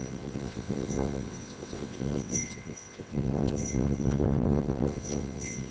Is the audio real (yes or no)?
no